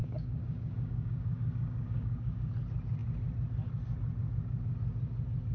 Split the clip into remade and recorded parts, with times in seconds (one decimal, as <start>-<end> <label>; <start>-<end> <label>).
0.0-2.5 remade; 2.5-5.5 recorded